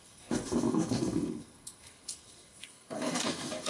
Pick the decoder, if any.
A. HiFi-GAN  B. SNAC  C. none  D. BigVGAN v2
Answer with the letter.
B